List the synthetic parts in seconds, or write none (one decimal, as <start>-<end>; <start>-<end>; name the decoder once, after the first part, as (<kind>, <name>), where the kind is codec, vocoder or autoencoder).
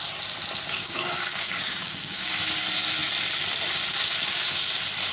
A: 0.8-2.3 (codec, DAC)